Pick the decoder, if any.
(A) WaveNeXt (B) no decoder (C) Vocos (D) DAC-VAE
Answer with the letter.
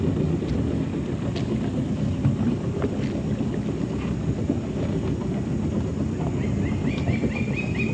B